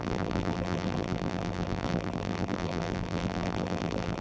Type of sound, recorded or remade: remade